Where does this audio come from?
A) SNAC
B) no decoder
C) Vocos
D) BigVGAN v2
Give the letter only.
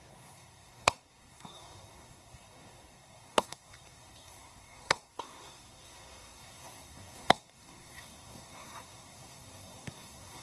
A